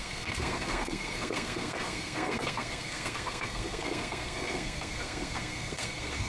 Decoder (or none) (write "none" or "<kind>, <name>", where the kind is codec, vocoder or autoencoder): codec, SNAC